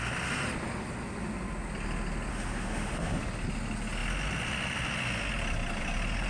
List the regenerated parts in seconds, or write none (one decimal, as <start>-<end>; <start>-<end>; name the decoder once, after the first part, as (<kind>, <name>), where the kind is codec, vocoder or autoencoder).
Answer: 2.3-3.2 (autoencoder, DAC-VAE)